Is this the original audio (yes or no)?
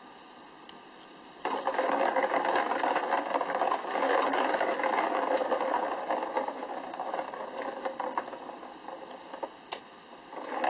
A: yes